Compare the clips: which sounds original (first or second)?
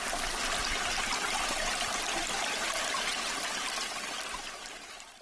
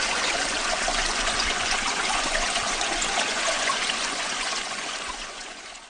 first